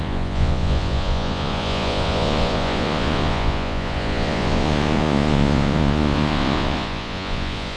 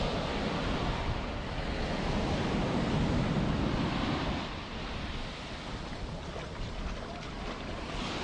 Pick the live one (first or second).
second